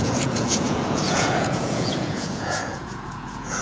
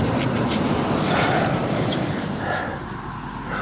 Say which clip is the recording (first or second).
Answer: second